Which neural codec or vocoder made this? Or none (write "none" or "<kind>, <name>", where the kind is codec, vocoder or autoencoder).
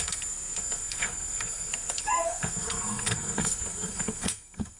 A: codec, SNAC